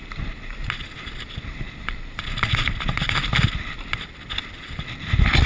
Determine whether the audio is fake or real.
real